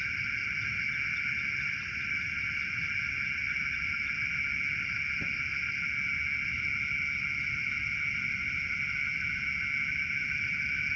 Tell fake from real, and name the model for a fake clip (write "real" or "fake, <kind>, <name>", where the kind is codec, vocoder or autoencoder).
real